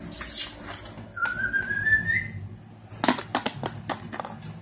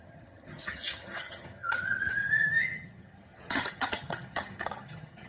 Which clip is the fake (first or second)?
second